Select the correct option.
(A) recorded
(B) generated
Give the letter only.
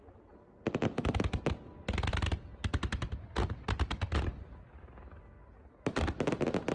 A